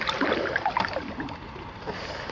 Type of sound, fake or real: real